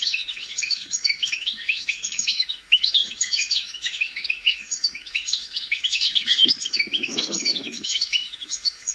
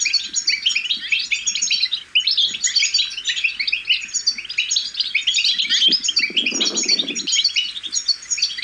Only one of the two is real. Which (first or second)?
second